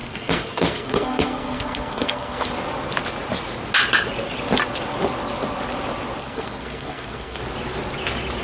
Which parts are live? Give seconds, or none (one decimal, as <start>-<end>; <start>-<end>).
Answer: 2.5-6.2; 7.4-8.4